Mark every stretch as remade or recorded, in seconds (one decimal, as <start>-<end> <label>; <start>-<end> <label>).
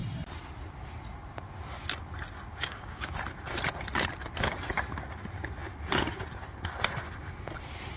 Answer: 0.0-2.5 recorded; 2.5-3.1 remade; 3.1-8.0 recorded